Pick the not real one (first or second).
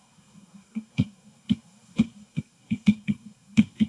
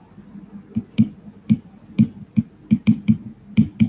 first